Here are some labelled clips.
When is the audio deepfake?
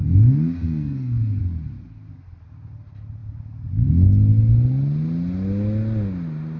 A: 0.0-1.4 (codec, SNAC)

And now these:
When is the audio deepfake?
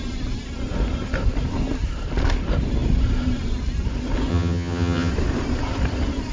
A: 4.3-5.1 (vocoder, HiFi-GAN)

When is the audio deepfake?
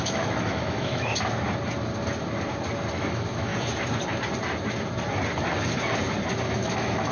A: 0.0-1.1 (autoencoder, DAC-VAE); 2.9-3.5; 6.5-7.1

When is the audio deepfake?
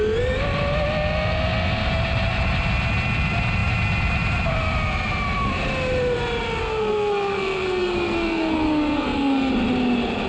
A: 6.6-9.5 (codec, SNAC)